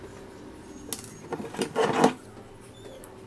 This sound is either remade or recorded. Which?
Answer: recorded